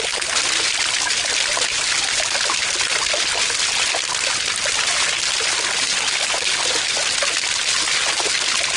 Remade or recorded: recorded